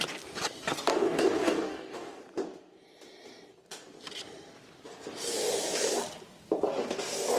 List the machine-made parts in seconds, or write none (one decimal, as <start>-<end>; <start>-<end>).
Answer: 0.9-2.2

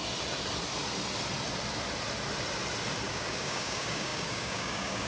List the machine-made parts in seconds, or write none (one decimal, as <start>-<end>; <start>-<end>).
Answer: 3.1-5.1

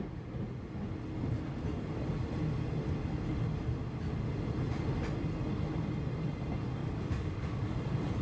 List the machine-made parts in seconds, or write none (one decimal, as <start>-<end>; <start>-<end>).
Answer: 6.8-7.7

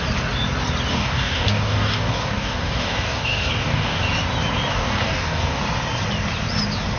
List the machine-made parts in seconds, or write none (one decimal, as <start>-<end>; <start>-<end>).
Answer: 0.9-4.0; 4.7-5.6

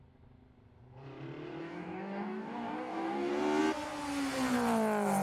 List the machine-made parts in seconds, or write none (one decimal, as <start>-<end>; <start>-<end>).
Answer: 1.6-3.3

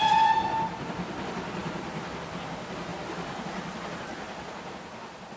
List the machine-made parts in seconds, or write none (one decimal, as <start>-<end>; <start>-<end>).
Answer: none

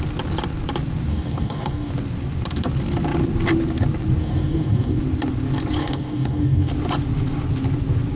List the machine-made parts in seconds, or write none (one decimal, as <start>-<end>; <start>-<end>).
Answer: 1.1-1.9; 4.2-5.0; 5.8-6.7

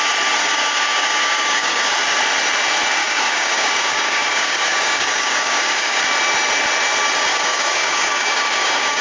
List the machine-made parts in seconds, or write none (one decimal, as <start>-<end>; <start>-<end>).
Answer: 0.4-1.8; 3.0-6.0; 7.3-9.0